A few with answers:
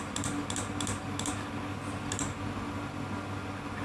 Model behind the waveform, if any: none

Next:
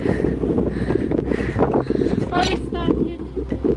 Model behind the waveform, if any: none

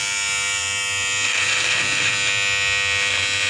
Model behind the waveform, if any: none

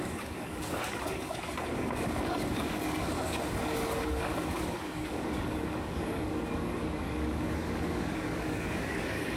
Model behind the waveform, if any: codec, DAC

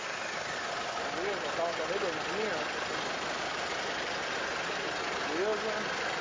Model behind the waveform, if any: none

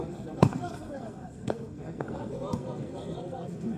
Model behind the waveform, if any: codec, SNAC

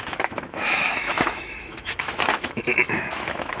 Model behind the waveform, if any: autoencoder, DAC-VAE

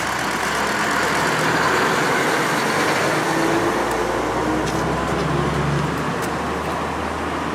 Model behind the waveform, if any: none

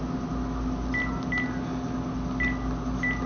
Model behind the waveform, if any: none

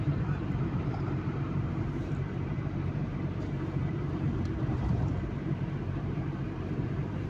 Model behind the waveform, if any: vocoder, BigVGAN v2